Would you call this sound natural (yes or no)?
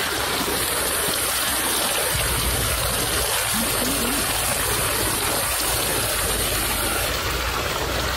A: yes